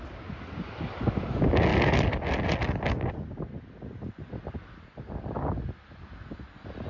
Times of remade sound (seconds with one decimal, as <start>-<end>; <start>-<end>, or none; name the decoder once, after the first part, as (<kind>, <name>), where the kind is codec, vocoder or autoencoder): none